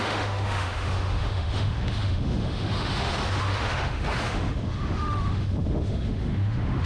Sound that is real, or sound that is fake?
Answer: fake